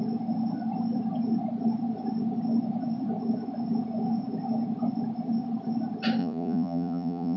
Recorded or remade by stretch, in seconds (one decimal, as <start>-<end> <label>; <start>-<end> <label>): 0.0-6.2 recorded; 6.2-7.4 remade